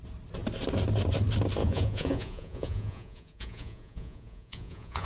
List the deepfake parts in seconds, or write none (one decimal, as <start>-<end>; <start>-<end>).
1.6-5.1